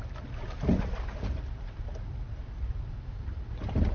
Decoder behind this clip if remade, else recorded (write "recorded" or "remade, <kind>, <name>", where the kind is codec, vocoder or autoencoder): recorded